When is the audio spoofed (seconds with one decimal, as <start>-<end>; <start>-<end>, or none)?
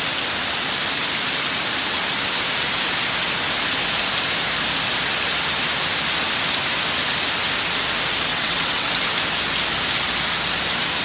8.3-8.9